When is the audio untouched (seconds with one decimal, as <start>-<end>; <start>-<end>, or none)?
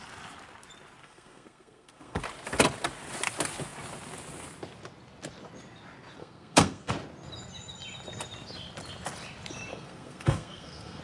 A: 0.0-1.0; 2.2-6.2; 6.9-9.7